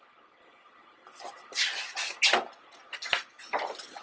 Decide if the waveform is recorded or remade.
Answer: recorded